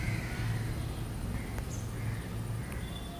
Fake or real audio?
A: real